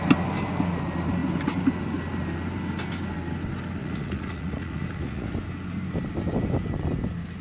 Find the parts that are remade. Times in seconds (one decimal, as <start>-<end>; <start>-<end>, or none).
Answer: 3.8-5.3